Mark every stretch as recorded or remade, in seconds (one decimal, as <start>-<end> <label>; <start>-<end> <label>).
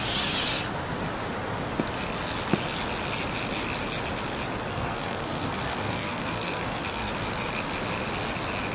0.0-4.7 recorded; 4.7-7.1 remade; 7.1-8.7 recorded